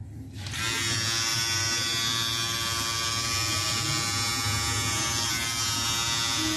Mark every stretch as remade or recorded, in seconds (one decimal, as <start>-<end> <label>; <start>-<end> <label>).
0.0-6.6 recorded